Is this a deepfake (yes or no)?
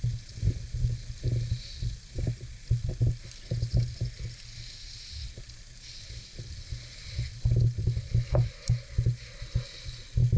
no